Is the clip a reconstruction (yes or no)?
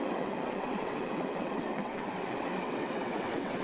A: yes